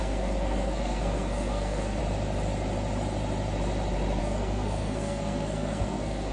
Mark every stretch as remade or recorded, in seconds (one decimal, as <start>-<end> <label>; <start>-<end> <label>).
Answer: 0.0-2.0 remade; 2.0-4.2 recorded; 4.2-6.3 remade